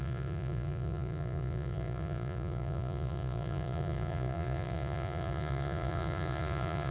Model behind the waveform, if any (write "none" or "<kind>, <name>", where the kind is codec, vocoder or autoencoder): vocoder, Vocos